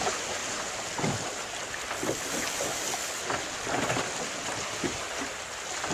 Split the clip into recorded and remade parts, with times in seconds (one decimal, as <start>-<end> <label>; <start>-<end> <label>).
0.0-5.9 recorded